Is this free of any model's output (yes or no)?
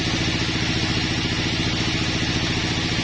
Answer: yes